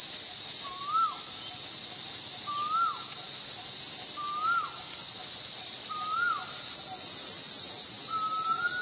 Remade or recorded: recorded